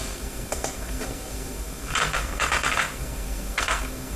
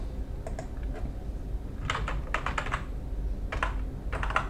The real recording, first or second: second